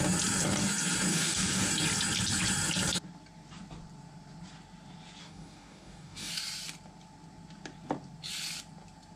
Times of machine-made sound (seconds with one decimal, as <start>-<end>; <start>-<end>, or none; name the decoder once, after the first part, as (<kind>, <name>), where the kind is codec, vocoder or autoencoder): 1.1-1.7 (codec, DAC); 5.2-6.3